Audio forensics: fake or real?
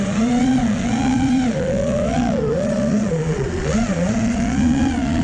fake